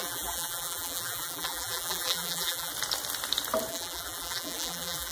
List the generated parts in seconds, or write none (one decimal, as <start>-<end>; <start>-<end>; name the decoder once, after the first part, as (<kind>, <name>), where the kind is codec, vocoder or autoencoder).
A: 0.0-2.7 (vocoder, BigVGAN v2); 3.7-5.1